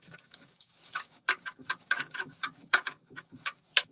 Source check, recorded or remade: remade